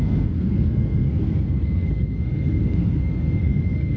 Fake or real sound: fake